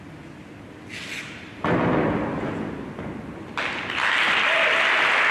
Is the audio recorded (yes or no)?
yes